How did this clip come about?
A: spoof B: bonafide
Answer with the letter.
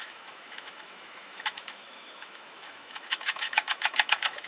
A